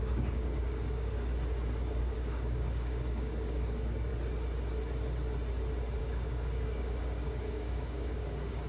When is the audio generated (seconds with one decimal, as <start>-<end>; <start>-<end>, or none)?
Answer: 0.0-1.3; 2.0-4.1; 6.0-8.7